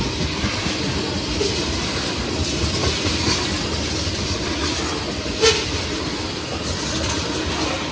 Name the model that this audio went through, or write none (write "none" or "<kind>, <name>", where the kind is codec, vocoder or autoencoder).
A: none